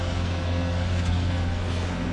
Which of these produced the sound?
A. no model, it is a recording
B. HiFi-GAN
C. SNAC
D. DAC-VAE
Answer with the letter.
C